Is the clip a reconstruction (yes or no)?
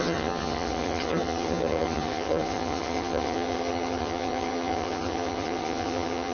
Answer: yes